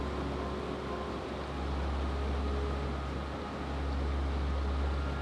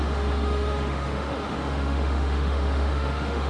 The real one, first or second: first